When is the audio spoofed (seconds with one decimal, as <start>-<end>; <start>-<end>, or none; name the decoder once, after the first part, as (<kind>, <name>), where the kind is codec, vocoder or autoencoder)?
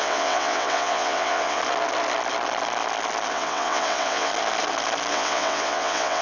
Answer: 0.0-1.6 (vocoder, WaveNeXt); 3.3-4.3; 5.1-6.2